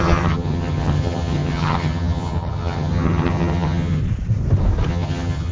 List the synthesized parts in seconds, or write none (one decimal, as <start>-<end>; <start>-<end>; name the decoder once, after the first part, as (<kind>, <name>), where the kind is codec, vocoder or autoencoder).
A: 0.0-4.0 (vocoder, HiFi-GAN); 4.9-5.5